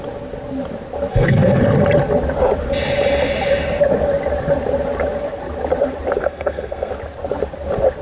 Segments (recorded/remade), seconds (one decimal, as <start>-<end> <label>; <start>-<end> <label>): 0.0-1.1 recorded; 1.1-1.6 remade; 1.6-6.2 recorded; 6.2-6.9 remade; 6.9-8.0 recorded